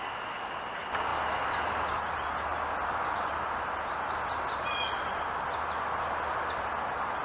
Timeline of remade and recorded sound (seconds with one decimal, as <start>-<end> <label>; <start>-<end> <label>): 0.0-7.2 recorded